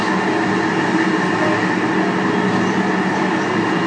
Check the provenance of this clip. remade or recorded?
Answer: recorded